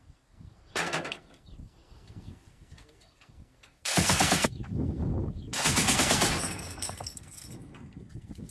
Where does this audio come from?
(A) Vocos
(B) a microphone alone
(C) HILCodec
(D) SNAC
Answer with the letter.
D